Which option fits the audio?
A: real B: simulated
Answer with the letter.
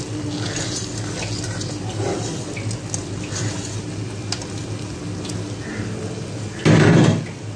A